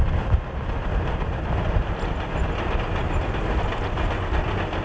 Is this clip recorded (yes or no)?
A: yes